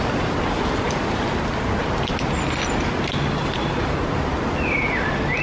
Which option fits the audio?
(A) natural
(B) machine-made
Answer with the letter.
A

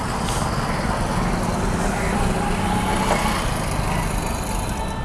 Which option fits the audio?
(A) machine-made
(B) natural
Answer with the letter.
B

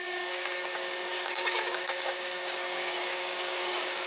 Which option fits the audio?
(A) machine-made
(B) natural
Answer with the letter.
A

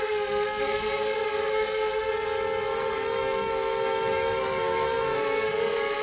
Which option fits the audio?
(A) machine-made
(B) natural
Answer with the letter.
A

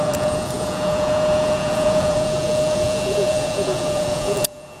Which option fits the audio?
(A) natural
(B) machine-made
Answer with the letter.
B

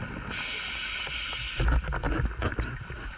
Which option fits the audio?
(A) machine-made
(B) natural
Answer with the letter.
B